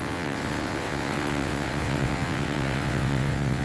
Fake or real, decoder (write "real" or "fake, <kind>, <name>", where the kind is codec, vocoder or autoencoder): fake, vocoder, WaveNeXt